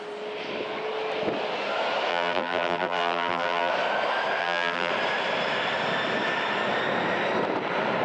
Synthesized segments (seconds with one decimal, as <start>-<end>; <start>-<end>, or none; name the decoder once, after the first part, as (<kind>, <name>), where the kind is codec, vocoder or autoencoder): 2.1-3.7 (vocoder, BigVGAN v2); 4.4-4.9